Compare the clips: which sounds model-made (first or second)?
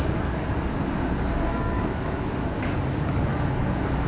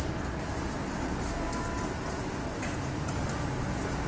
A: first